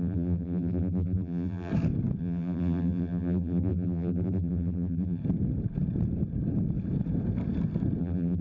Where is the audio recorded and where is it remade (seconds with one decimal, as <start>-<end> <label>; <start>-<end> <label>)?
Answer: 0.0-1.7 remade; 1.7-2.2 recorded; 2.2-5.2 remade; 5.2-8.0 recorded; 8.0-8.4 remade